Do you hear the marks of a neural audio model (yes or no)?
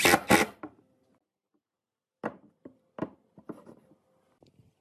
no